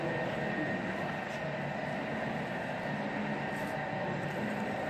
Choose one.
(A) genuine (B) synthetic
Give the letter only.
A